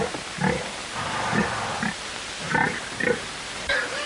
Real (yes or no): yes